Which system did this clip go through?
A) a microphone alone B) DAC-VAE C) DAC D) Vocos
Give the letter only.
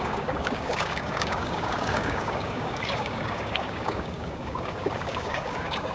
C